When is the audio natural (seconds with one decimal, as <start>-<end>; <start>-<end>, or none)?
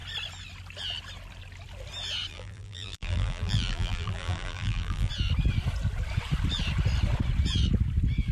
0.0-2.3; 5.1-8.3